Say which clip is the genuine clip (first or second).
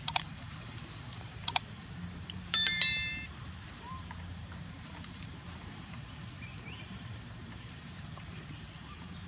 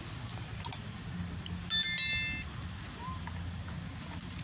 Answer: second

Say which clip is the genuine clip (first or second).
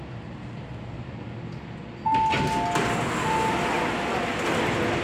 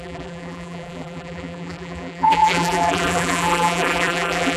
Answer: first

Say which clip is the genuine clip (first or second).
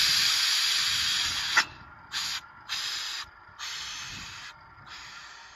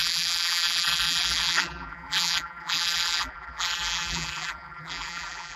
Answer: first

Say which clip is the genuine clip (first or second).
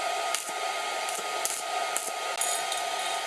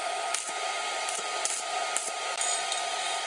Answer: first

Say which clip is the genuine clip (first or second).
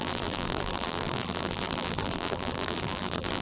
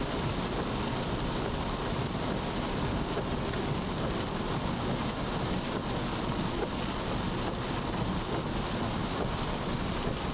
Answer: second